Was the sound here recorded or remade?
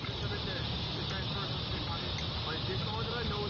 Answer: recorded